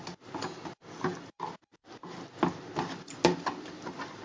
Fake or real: real